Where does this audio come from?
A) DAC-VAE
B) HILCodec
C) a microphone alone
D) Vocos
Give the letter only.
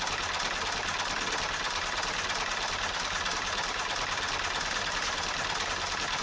C